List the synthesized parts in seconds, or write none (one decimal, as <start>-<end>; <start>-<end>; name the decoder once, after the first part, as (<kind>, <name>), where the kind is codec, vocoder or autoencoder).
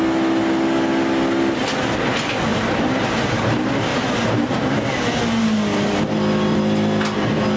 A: 2.5-4.7 (vocoder, BigVGAN v2)